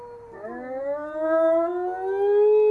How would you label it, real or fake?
real